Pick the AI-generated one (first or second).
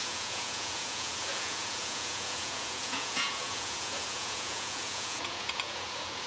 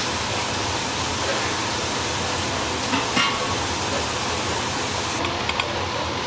first